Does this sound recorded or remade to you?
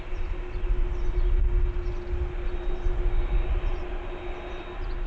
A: recorded